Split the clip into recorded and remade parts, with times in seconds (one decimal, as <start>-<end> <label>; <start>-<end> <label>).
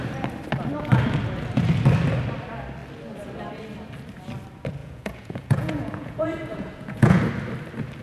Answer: 0.0-4.8 recorded; 4.8-7.2 remade; 7.2-8.0 recorded